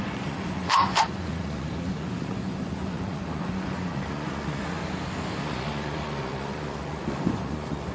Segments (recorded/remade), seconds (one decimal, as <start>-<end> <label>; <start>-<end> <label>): 0.0-4.8 remade; 4.8-5.4 recorded; 5.4-7.9 remade